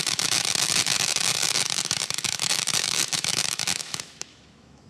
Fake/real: fake